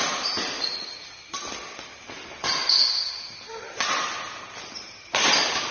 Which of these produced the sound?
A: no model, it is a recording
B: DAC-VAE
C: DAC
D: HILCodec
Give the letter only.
A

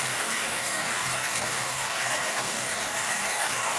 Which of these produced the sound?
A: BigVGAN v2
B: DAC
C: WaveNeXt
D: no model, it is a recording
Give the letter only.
B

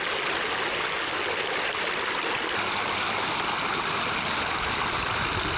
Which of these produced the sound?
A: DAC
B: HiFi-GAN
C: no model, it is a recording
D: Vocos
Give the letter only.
C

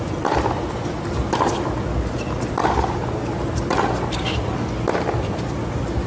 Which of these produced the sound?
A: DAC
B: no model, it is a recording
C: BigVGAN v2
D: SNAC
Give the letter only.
B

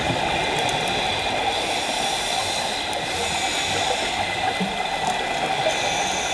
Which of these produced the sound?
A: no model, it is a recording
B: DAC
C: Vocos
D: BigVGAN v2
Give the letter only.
A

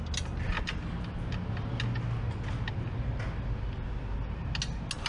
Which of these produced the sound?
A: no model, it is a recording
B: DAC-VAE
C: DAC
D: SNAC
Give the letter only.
A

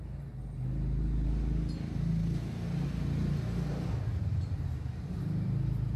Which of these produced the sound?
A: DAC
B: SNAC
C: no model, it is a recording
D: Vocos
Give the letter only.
C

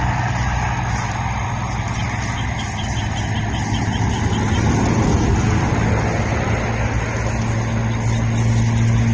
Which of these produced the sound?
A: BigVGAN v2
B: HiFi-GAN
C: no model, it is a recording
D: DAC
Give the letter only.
C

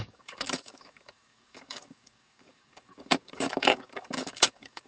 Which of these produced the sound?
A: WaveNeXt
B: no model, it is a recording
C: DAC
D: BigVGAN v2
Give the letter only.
C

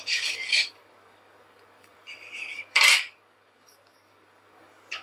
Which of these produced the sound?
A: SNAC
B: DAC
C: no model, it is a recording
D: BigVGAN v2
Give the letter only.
B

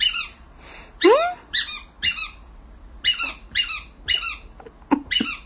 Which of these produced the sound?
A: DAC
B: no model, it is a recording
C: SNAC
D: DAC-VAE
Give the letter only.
B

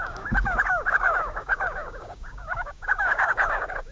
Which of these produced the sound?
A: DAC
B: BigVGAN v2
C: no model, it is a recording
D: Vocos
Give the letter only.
A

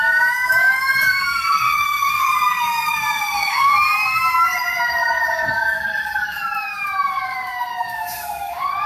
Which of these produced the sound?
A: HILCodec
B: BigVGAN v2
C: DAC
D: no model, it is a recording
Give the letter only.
C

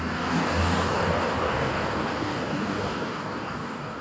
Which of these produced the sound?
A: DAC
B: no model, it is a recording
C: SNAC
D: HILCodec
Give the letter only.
A